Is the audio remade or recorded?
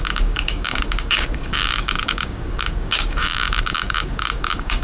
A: remade